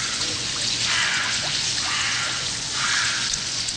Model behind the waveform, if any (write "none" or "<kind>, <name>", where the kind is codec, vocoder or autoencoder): vocoder, Vocos